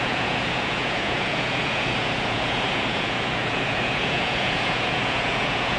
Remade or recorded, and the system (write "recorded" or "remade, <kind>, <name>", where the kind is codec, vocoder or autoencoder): remade, vocoder, Vocos